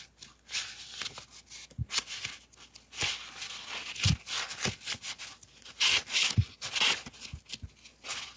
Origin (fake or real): real